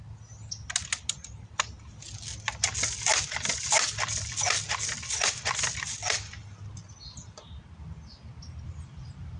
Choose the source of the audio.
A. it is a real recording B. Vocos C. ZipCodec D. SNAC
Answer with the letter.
A